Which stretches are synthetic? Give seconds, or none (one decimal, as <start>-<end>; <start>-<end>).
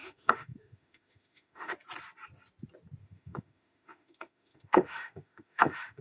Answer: 0.0-1.7; 3.0-6.0